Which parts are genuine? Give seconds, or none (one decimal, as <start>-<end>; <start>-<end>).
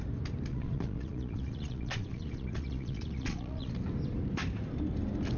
0.0-0.5; 3.7-5.4